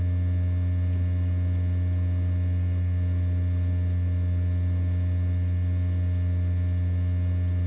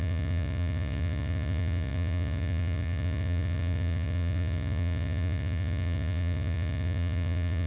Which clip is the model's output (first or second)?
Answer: second